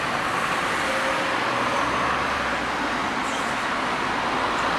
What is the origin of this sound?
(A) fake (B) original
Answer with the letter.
B